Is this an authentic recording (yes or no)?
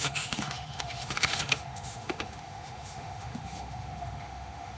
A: no